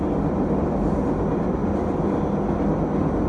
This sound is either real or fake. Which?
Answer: real